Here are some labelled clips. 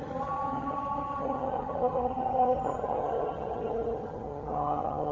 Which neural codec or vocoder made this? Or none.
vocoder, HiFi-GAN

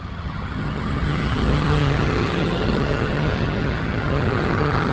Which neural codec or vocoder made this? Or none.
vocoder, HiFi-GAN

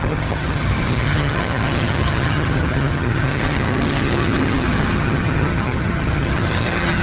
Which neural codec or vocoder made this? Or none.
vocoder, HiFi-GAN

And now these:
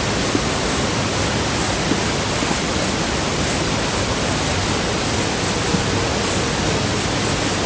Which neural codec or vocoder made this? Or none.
none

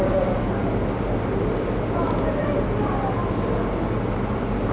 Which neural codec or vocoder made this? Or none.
none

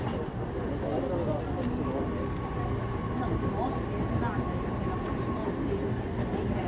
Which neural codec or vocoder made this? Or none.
none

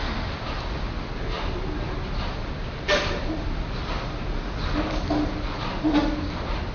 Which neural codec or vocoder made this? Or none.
none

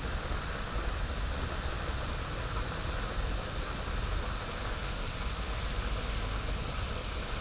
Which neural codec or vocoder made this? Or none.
none